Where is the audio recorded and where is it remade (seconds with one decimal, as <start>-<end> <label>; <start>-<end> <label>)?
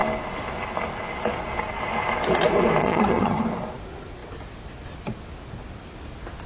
0.0-2.8 recorded; 2.8-3.4 remade; 3.4-6.5 recorded